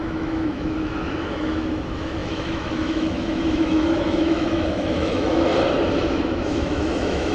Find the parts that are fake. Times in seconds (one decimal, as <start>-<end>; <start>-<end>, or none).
0.0-5.5; 6.0-7.3